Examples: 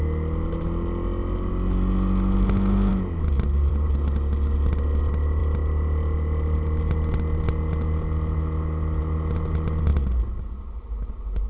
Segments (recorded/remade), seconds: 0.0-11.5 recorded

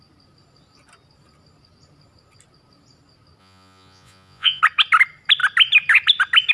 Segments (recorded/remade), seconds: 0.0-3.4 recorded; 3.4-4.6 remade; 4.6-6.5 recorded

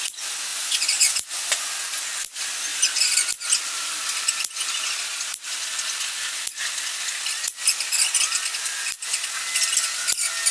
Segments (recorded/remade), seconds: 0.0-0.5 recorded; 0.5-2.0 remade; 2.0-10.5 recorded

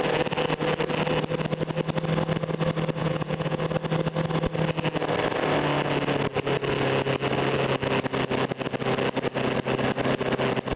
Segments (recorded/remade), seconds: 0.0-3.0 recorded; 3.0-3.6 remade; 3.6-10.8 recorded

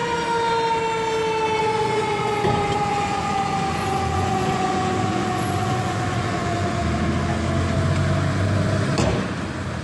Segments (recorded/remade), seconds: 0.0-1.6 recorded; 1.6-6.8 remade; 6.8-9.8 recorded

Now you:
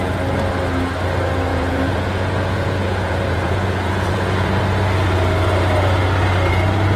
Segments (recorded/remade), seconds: 0.0-1.5 recorded; 1.5-4.6 remade; 4.6-7.0 recorded

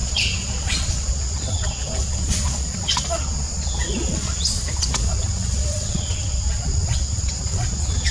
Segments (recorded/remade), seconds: 0.0-8.1 remade

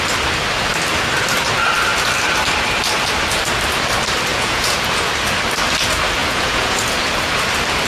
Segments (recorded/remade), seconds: 0.0-4.3 recorded; 4.3-5.1 remade; 5.1-6.2 recorded; 6.2-6.9 remade; 6.9-7.9 recorded